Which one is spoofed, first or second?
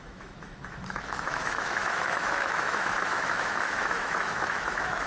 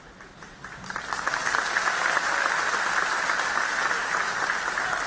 first